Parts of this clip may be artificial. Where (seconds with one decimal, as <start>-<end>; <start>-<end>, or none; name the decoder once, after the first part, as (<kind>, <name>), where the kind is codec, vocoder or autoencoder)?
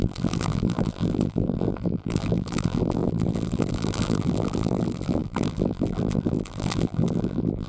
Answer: 0.0-7.7 (vocoder, BigVGAN v2)